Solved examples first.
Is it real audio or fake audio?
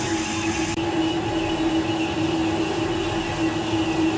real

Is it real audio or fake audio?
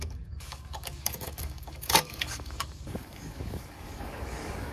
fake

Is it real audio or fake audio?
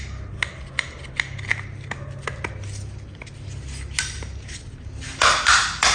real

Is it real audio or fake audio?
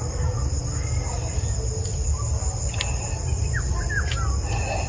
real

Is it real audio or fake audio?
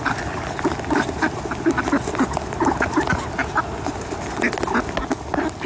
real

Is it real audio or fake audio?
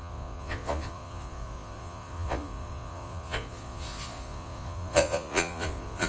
fake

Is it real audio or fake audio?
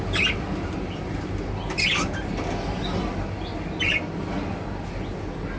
real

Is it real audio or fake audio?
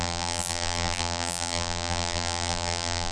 fake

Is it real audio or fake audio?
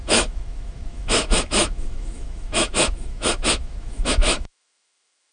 fake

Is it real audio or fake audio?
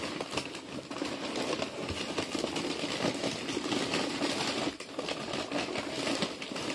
real